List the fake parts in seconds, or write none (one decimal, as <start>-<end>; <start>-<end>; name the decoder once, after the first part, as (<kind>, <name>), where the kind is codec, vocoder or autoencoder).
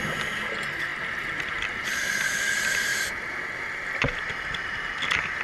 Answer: none